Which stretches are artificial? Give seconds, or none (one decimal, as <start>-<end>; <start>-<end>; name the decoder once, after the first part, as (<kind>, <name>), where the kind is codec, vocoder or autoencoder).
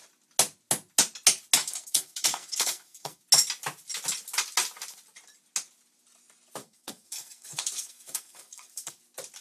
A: 1.6-3.2 (codec, SNAC); 6.6-9.0